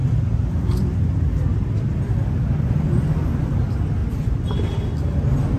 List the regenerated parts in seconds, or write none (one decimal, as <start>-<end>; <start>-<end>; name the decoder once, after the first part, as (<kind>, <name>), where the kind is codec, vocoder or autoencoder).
4.0-4.9 (vocoder, BigVGAN v2)